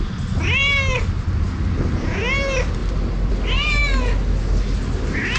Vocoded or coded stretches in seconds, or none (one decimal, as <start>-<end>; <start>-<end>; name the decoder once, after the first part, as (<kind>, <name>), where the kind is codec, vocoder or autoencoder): none